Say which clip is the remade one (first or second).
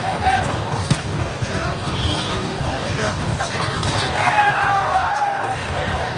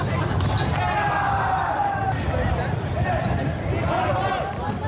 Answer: first